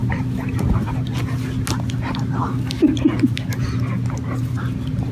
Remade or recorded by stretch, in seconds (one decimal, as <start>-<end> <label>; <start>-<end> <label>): 0.0-5.1 recorded